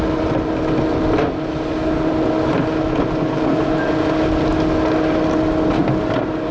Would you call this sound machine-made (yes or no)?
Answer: no